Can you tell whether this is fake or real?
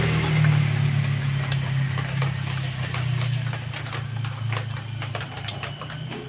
real